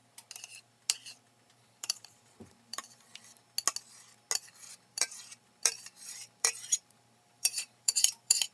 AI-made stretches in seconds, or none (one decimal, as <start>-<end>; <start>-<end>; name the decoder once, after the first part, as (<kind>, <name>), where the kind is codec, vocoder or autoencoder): 1.5-3.1 (vocoder, BigVGAN v2); 4.9-8.5